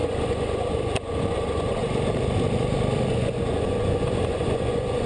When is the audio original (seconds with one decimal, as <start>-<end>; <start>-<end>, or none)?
1.8-3.1